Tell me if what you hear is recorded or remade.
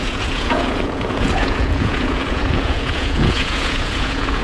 remade